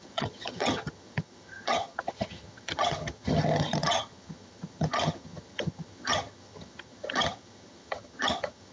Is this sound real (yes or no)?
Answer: no